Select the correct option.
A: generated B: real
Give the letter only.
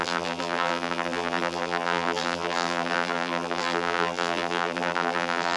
A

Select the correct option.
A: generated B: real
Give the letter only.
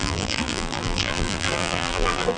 A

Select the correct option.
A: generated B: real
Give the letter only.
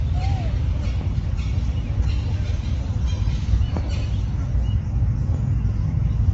B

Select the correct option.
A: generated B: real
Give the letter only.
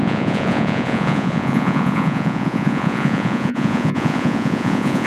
A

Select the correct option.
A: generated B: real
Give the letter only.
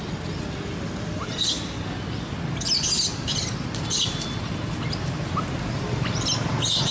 B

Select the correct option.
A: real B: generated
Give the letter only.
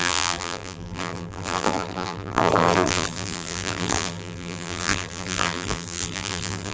B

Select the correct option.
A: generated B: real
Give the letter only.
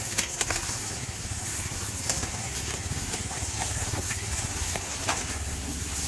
A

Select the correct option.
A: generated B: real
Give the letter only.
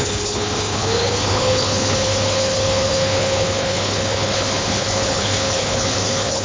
A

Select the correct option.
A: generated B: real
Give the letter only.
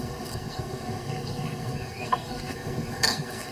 A